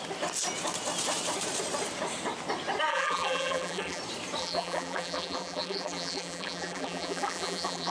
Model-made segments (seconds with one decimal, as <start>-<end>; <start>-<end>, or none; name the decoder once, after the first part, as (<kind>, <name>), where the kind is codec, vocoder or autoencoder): 2.9-4.0 (vocoder, BigVGAN v2); 4.4-7.9